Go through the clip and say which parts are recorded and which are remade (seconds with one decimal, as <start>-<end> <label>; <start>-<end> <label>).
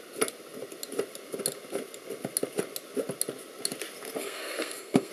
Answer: 0.0-4.2 recorded; 4.2-5.1 remade